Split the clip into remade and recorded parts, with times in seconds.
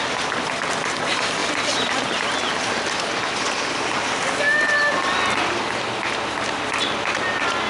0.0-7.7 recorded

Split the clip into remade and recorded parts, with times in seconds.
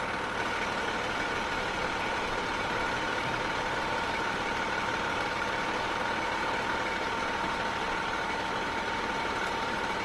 0.0-1.8 recorded; 1.8-6.0 remade; 6.0-10.0 recorded